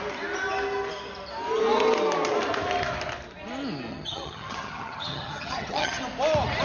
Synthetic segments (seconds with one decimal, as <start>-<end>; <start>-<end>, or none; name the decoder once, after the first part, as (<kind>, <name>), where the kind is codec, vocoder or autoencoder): 3.9-6.0 (vocoder, HiFi-GAN)